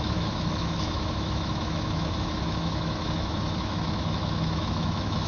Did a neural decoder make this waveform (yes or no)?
yes